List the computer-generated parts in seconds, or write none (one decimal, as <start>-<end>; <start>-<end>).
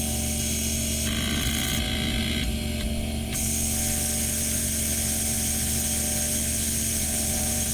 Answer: 6.9-7.7